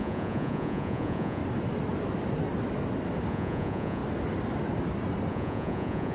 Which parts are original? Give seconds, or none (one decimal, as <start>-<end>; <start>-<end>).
1.4-3.3; 4.0-5.3

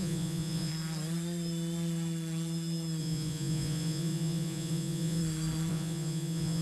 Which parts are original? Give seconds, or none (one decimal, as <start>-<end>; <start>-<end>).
0.7-3.0; 5.2-5.7

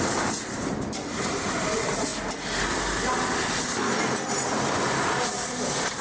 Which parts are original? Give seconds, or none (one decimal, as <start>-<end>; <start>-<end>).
0.0-6.0

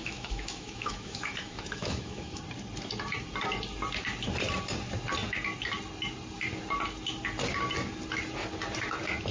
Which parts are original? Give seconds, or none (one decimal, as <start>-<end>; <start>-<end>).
2.4-9.3

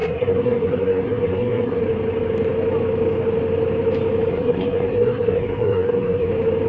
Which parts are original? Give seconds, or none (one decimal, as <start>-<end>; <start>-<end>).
1.8-4.3; 6.3-6.7

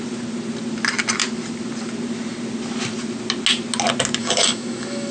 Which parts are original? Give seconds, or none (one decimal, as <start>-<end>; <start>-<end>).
0.0-4.2

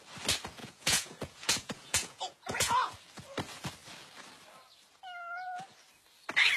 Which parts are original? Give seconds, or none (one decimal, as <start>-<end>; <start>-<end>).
0.0-0.6; 2.9-6.6

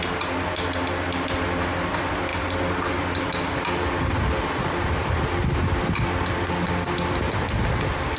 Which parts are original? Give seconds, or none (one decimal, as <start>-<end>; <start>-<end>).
0.0-8.2